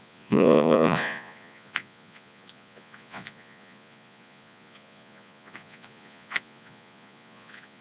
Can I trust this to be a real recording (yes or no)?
no